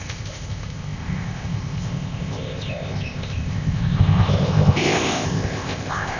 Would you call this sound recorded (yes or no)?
no